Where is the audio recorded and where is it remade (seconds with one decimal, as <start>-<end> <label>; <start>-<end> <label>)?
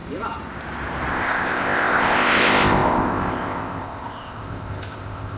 0.0-1.1 recorded; 1.1-5.4 remade